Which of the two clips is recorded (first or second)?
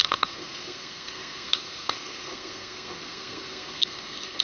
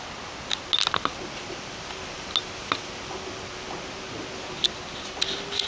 second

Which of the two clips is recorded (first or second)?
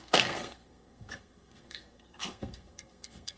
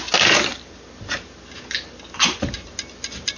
second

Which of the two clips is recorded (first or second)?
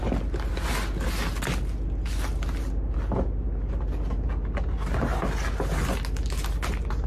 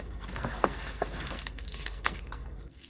first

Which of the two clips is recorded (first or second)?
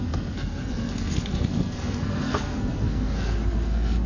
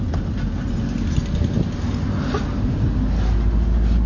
second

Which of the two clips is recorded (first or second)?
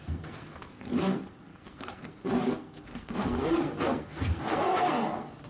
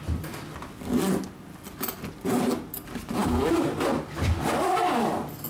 second